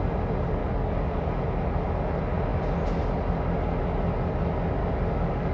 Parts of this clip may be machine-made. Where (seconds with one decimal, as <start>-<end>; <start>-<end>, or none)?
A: 0.6-1.2; 4.8-5.5

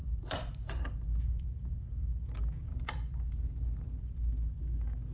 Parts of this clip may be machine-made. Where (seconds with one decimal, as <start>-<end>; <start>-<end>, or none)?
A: 1.2-2.7; 4.0-5.1

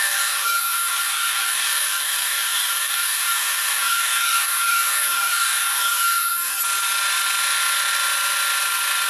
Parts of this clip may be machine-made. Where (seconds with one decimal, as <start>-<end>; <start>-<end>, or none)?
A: 0.0-6.6